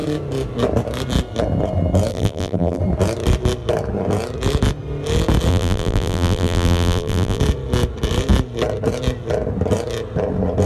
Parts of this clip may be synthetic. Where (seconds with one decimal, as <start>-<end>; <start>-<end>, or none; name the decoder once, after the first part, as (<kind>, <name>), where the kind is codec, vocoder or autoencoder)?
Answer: 2.1-2.8 (vocoder, BigVGAN v2); 5.5-7.4